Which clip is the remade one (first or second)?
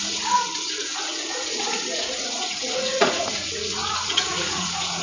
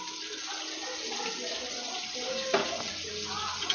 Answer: first